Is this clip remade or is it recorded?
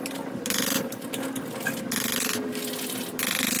recorded